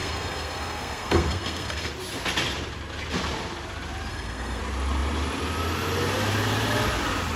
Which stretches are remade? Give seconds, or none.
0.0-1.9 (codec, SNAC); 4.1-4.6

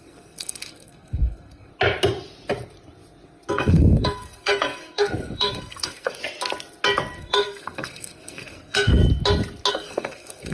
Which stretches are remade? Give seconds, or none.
0.0-1.7 (codec, SNAC); 3.5-6.2; 7.2-9.0; 9.7-10.5

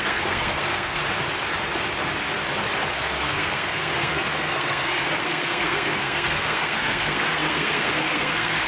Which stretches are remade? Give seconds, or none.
0.0-1.0 (codec, SNAC); 2.9-8.7

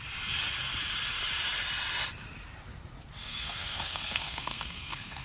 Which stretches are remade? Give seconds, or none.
3.2-5.2 (codec, SNAC)